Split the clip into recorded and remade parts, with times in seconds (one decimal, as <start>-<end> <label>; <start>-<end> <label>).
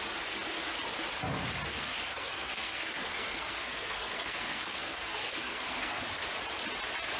0.0-1.7 recorded; 1.7-6.0 remade; 6.0-7.2 recorded